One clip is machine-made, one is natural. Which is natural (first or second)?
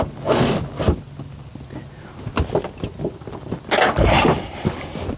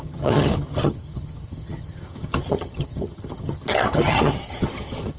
first